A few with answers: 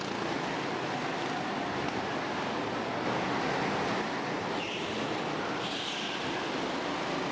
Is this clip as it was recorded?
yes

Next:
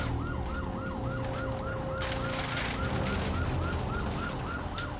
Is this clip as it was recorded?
yes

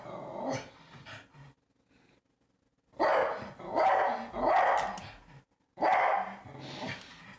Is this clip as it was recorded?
yes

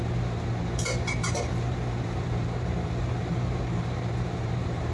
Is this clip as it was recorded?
no